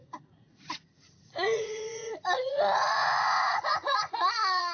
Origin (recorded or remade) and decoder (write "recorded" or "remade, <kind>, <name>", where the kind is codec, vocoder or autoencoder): remade, vocoder, Vocos